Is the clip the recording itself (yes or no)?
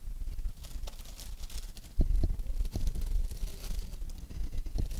yes